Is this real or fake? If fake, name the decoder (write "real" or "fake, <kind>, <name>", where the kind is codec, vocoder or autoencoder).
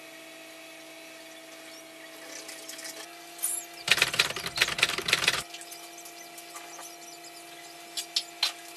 real